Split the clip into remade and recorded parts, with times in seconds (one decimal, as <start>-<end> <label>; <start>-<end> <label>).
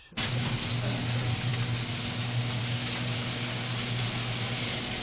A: 0.0-5.0 recorded